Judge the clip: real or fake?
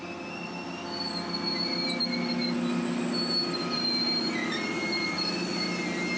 real